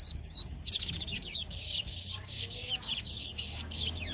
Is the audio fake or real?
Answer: fake